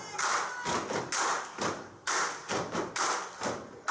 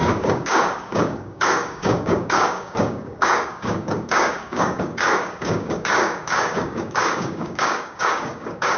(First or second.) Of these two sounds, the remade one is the second